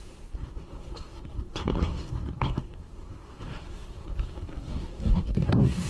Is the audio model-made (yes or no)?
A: yes